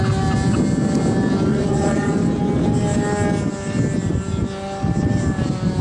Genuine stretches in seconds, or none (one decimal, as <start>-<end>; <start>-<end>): 0.0-1.5; 2.2-5.8